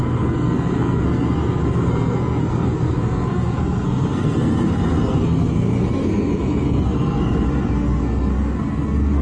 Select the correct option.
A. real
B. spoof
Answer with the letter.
B